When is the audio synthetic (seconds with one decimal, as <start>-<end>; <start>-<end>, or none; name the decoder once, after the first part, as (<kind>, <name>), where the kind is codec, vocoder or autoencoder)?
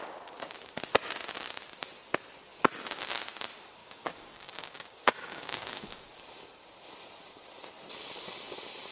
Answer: 3.8-6.1 (codec, DAC)